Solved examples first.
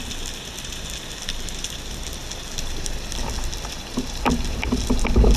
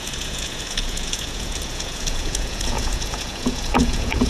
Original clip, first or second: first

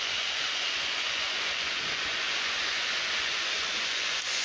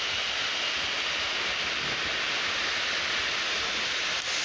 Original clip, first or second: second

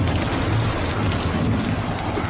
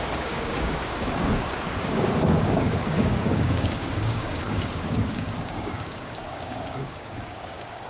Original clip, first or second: first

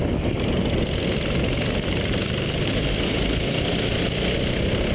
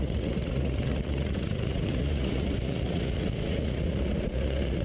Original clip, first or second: first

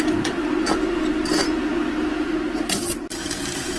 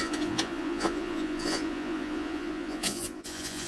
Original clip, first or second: first